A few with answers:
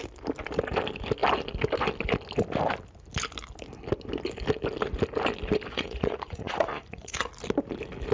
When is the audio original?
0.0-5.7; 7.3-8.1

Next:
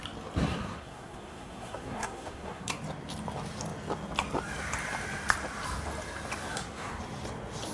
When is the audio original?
0.0-0.4; 2.8-6.5; 7.0-7.7

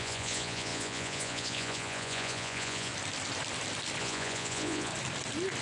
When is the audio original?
2.9-4.0; 4.9-5.6

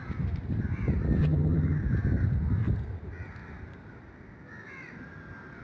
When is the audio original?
0.0-1.2; 1.8-5.6

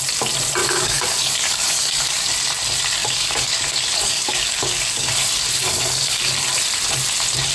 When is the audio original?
0.0-0.6; 2.3-3.0; 5.1-5.6; 6.2-7.5

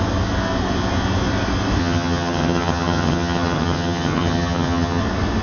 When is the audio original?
0.0-1.8; 5.0-5.4